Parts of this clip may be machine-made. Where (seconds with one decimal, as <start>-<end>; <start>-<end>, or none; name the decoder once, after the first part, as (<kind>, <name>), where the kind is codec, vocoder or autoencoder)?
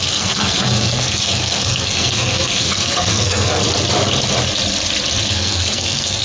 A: 0.0-3.6 (codec, SNAC); 5.3-6.2